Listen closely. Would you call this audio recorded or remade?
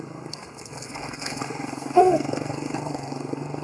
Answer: remade